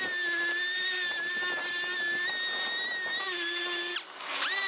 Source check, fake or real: real